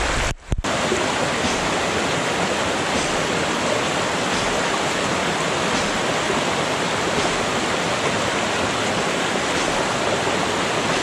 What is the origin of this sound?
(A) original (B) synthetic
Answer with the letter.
A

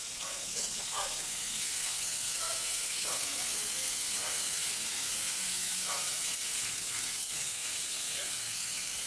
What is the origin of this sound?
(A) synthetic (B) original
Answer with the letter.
A